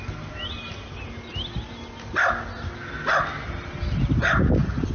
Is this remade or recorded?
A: recorded